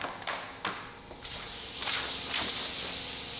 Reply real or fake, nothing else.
real